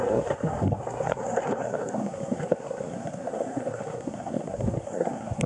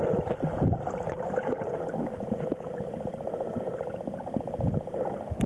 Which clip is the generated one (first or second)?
first